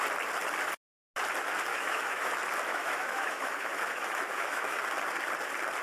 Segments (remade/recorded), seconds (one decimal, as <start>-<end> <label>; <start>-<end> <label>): 0.0-1.7 recorded; 1.7-2.3 remade; 2.3-2.7 recorded; 2.7-4.8 remade; 4.8-5.8 recorded